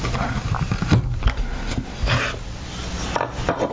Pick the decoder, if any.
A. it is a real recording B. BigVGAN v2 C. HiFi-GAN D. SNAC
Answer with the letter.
A